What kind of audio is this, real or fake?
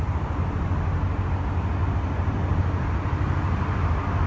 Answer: real